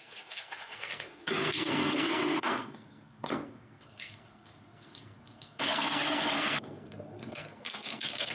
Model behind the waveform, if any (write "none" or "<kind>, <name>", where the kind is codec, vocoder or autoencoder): codec, SNAC